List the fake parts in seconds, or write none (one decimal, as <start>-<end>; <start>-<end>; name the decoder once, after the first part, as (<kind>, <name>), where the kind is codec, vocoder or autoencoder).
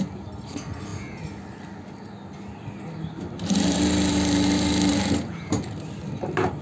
none